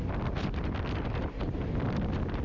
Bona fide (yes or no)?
yes